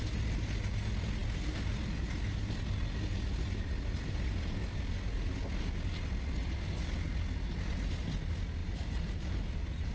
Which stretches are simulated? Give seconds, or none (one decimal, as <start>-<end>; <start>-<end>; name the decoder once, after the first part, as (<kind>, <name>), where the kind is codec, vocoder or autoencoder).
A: 8.6-9.9 (vocoder, BigVGAN v2)